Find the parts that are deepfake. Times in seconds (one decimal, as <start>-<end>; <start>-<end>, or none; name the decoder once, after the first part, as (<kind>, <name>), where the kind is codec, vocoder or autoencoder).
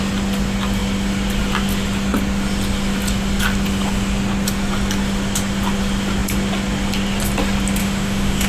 7.8-8.5 (autoencoder, DAC-VAE)